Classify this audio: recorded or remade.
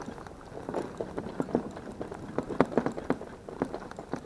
recorded